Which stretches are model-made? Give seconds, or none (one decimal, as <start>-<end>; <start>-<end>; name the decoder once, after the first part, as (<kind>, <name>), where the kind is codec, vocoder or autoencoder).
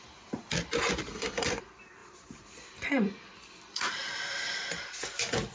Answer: 1.1-1.6 (codec, SNAC)